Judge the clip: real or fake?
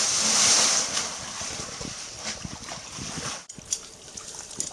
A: real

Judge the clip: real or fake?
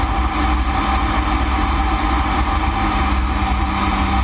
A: real